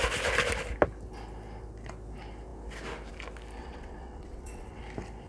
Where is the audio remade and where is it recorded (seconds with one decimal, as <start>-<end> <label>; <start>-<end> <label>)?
0.0-3.6 recorded; 3.6-4.8 remade; 4.8-5.3 recorded